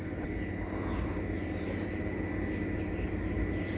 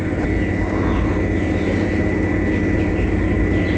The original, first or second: second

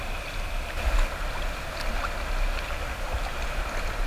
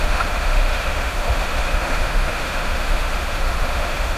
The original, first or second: first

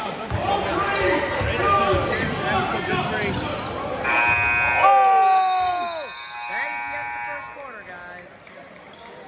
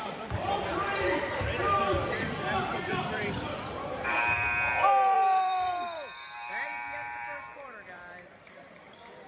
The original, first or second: first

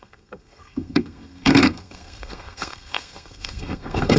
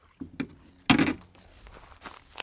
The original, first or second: second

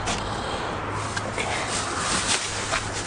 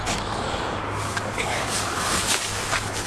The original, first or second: first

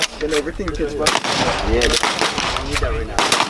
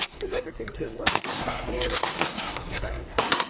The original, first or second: first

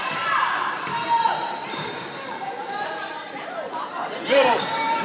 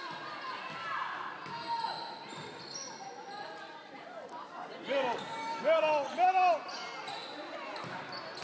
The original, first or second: second